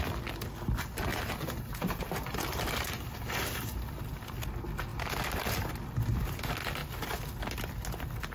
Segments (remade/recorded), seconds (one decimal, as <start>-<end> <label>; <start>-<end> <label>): 0.0-1.1 recorded; 1.1-3.9 remade; 3.9-4.9 recorded; 4.9-5.6 remade; 5.6-8.3 recorded